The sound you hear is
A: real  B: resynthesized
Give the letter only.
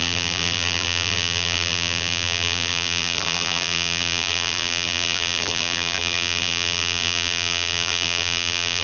B